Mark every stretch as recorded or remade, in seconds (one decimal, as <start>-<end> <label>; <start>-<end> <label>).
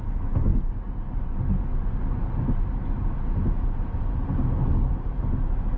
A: 0.0-5.8 recorded